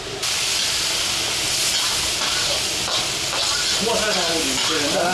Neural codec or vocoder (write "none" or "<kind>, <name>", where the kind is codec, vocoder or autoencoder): none